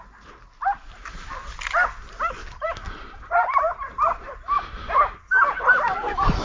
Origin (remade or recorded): recorded